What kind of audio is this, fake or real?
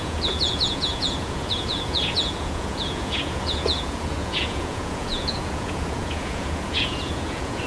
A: fake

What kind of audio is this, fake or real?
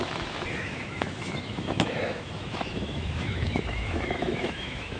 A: fake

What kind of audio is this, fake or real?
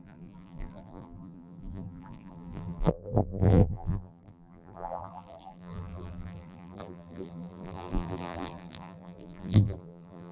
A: fake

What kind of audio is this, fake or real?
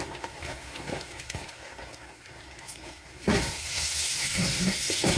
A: fake